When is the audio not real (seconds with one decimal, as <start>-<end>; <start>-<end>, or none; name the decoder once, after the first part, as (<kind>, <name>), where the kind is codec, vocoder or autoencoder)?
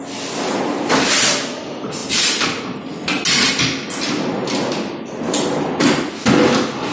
none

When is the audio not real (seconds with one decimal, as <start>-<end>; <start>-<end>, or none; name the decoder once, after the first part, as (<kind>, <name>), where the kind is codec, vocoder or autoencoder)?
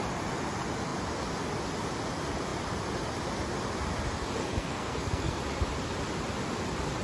4.4-5.4 (codec, SNAC)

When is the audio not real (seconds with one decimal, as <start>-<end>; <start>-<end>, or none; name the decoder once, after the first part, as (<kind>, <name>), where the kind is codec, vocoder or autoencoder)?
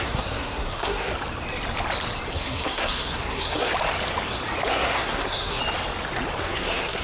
0.0-1.1 (codec, SNAC); 2.3-3.7; 4.7-5.6; 6.4-7.0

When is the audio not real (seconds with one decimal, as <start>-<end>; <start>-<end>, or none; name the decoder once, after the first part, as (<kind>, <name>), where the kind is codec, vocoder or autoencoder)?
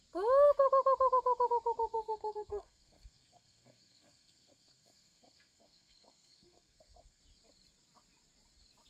1.9-7.2 (codec, SNAC)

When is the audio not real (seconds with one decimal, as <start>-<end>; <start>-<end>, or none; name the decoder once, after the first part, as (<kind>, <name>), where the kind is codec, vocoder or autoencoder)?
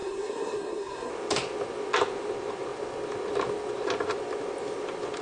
0.0-1.1 (codec, SNAC)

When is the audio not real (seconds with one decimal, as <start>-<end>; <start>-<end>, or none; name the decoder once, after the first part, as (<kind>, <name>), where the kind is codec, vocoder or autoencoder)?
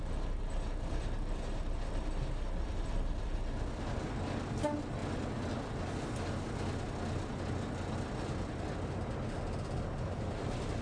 none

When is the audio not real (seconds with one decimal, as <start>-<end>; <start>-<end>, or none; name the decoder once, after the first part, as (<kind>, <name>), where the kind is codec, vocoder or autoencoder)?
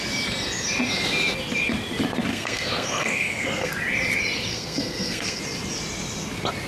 2.3-3.7 (codec, SNAC); 4.5-5.4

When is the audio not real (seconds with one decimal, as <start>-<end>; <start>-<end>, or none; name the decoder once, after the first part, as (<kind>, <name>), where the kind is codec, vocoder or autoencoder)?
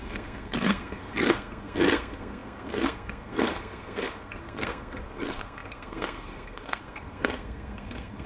0.0-8.3 (codec, SNAC)